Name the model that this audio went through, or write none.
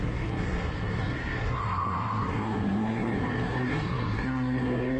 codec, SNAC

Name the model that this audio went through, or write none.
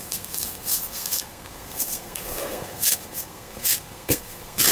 codec, SNAC